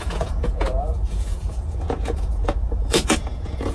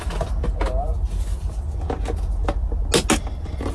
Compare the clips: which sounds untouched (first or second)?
second